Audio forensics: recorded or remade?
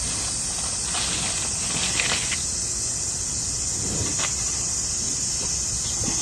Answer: recorded